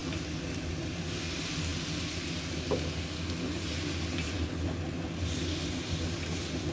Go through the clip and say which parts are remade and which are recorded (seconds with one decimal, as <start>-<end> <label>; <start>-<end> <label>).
0.0-6.7 recorded